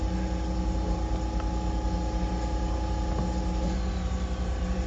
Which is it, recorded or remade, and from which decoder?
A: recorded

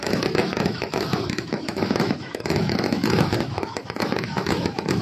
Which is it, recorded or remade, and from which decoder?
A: remade, autoencoder, DAC-VAE